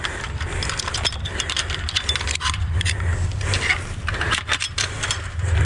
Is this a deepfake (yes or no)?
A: no